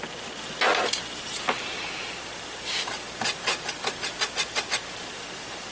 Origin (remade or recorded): recorded